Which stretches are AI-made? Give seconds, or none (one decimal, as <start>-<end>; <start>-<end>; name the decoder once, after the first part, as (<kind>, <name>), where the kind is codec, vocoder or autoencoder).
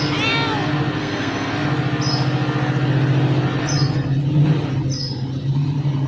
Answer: 1.0-1.5 (codec, SNAC)